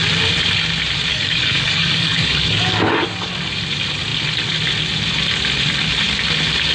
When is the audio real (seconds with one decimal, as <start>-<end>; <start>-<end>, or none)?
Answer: 0.0-1.1; 3.3-6.7